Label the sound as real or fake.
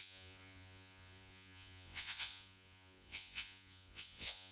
fake